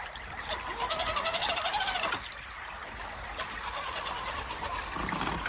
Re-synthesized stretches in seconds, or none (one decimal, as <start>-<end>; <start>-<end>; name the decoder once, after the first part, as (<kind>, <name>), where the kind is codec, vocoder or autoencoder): none